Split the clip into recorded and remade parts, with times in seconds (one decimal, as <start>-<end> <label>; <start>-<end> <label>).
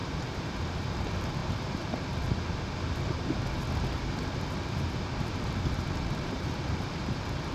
0.0-1.4 remade; 1.4-5.2 recorded; 5.2-7.5 remade